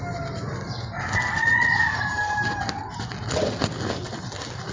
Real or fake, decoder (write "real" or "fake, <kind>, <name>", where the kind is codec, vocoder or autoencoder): real